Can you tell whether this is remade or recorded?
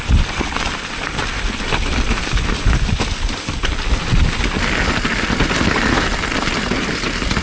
recorded